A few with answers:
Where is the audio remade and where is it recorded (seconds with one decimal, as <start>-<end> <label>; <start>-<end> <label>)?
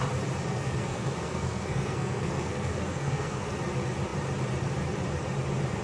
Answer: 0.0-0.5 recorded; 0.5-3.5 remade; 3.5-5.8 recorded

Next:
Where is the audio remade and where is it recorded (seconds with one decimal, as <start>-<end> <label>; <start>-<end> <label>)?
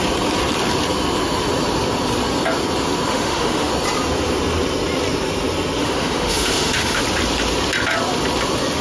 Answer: 0.0-3.1 recorded; 3.1-3.7 remade; 3.7-5.8 recorded; 5.8-7.0 remade; 7.0-8.8 recorded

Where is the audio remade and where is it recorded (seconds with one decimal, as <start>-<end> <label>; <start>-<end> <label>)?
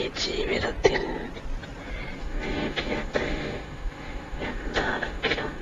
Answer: 0.0-2.2 recorded; 2.2-5.6 remade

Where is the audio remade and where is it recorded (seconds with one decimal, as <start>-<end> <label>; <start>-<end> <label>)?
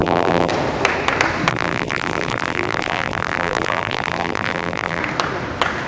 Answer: 0.0-0.5 remade; 0.5-1.5 recorded; 1.5-5.0 remade; 5.0-5.9 recorded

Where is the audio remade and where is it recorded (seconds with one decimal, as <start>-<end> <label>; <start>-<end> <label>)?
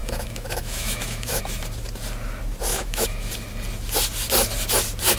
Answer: 0.0-1.4 remade; 1.4-2.7 recorded; 2.7-3.3 remade; 3.3-5.2 recorded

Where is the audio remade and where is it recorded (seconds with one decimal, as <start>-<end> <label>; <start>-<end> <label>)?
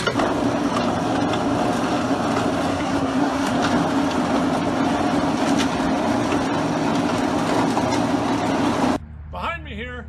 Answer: 0.0-2.7 recorded; 2.7-3.5 remade; 3.5-10.1 recorded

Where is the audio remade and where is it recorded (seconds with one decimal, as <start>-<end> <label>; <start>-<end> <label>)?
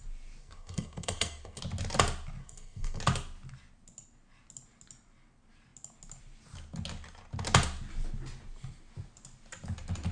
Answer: 0.0-0.4 recorded; 0.4-1.6 remade; 1.6-2.4 recorded; 2.4-3.0 remade; 3.0-10.1 recorded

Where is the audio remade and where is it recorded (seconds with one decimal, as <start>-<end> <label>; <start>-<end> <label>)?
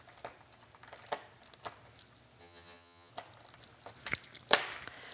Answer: 0.0-2.4 recorded; 2.4-3.1 remade; 3.1-5.1 recorded